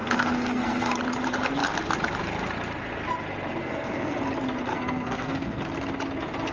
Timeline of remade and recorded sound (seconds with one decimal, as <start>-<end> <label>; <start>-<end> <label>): 0.0-0.9 remade; 0.9-3.6 recorded; 3.6-4.2 remade; 4.2-4.7 recorded; 4.7-5.6 remade; 5.6-6.5 recorded